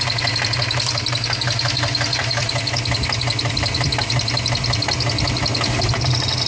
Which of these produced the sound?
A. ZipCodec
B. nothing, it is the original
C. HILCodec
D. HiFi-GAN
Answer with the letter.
B